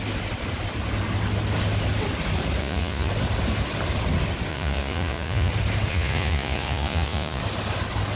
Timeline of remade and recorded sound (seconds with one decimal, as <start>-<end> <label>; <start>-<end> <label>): 0.0-2.6 recorded; 2.6-3.1 remade; 3.1-4.5 recorded; 4.5-5.5 remade; 5.5-5.9 recorded; 5.9-7.4 remade; 7.4-8.2 recorded